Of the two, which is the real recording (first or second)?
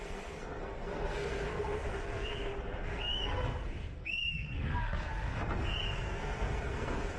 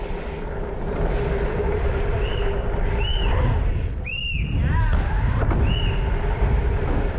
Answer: second